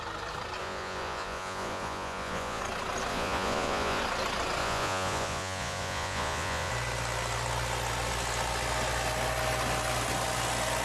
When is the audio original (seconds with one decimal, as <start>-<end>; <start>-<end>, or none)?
0.0-0.6; 2.6-3.1; 4.0-4.6; 6.7-10.8